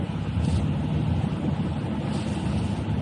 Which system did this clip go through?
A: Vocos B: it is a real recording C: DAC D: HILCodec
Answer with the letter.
B